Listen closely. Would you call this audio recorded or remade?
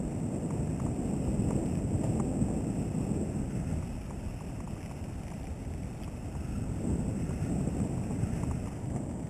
recorded